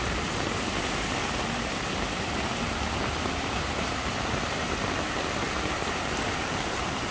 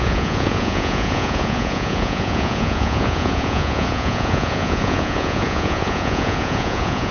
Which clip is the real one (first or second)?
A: first